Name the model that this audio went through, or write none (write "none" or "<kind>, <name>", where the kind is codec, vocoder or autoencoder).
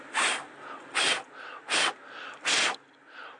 none